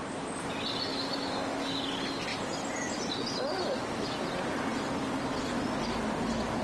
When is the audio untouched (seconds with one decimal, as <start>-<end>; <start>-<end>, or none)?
0.0-0.9; 1.7-6.6